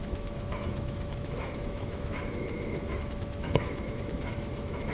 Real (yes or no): no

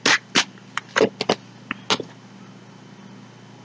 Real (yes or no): yes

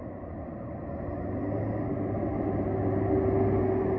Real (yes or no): yes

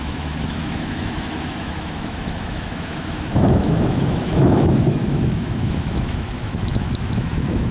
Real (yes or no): no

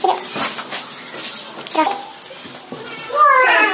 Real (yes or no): yes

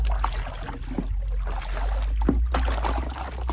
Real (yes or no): yes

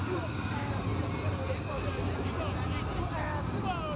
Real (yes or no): yes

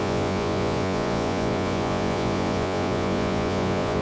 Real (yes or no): no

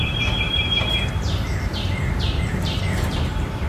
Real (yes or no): no